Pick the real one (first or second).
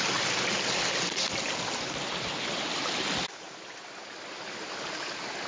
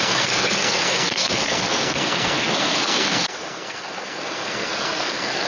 first